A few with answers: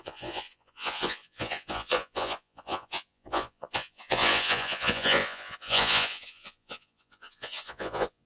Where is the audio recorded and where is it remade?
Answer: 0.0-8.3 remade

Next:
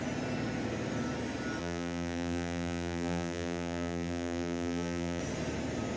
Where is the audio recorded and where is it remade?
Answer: 0.0-1.6 recorded; 1.6-5.2 remade; 5.2-6.0 recorded